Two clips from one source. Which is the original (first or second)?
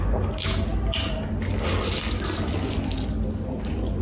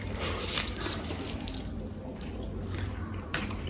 first